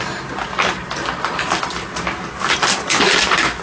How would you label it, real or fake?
real